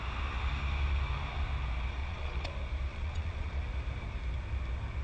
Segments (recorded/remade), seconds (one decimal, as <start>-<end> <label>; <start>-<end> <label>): 0.0-2.0 recorded; 2.0-2.5 remade; 2.5-2.9 recorded; 2.9-3.6 remade; 3.6-5.0 recorded